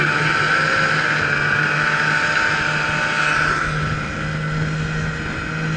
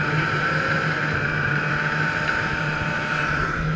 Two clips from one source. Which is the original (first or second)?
first